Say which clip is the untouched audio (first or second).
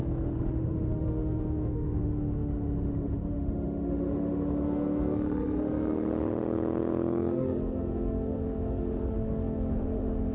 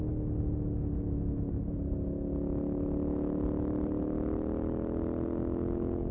second